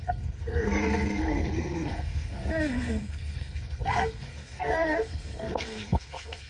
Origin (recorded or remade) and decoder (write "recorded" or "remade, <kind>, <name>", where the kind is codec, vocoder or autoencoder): remade, codec, SNAC